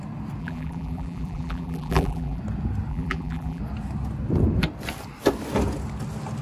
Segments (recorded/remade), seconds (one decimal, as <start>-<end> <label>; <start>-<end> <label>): 0.0-0.4 recorded; 0.4-2.4 remade; 2.4-2.9 recorded; 2.9-3.6 remade; 3.6-6.4 recorded